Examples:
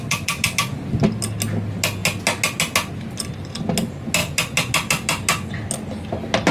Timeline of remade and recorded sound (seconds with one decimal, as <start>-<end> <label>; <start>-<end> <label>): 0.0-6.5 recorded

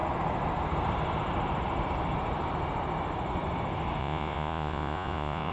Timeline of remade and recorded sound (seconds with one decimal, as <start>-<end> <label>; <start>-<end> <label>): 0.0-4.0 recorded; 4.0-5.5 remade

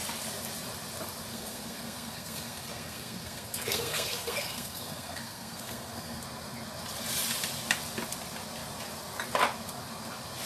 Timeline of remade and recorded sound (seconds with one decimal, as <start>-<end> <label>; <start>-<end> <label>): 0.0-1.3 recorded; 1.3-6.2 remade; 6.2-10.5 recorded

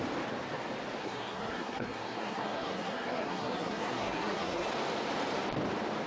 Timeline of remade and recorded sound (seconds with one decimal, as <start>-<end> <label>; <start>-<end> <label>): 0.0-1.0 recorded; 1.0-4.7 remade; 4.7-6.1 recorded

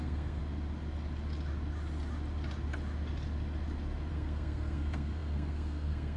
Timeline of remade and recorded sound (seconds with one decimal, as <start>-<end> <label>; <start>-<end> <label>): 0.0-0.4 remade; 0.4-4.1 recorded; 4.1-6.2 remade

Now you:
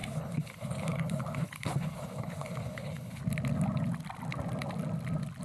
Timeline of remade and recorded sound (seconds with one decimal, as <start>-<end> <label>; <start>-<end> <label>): 0.0-3.2 remade; 3.2-5.4 recorded

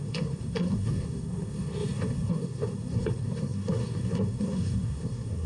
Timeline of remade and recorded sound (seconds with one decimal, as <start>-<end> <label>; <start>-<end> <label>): 0.0-5.5 remade